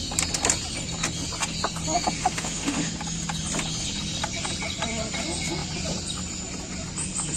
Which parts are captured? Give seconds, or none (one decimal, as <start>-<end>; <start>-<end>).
0.0-2.2; 2.9-7.4